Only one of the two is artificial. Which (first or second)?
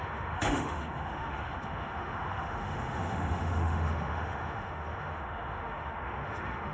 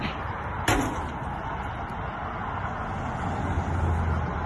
first